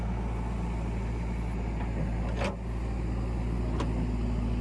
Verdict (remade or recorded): recorded